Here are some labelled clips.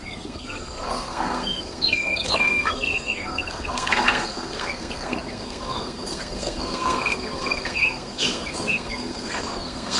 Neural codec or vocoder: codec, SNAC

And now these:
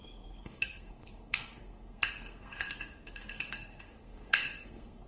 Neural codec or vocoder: codec, SNAC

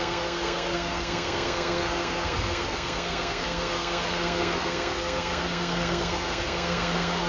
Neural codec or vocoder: codec, SNAC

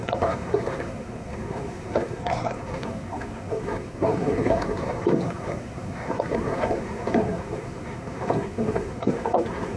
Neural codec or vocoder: codec, SNAC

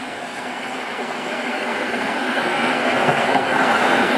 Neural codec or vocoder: codec, SNAC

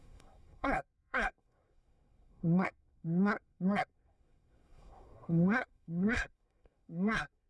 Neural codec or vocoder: codec, SNAC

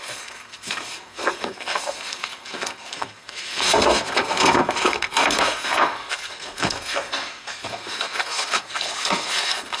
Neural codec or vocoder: codec, SNAC